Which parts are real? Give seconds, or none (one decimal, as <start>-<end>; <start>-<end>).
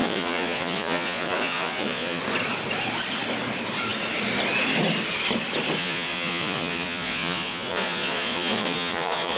2.2-5.8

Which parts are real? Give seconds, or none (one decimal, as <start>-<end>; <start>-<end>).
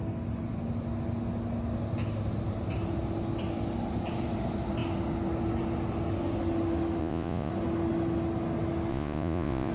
0.0-7.0; 7.5-8.9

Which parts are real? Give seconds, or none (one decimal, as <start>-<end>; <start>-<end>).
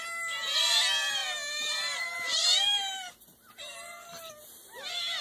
0.0-1.2; 4.3-5.2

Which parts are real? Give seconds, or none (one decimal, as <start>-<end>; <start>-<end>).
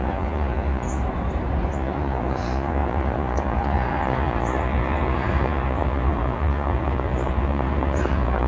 1.0-1.7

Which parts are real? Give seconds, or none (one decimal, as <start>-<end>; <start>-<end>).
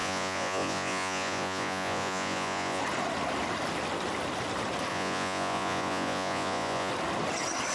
2.8-4.9; 6.9-7.7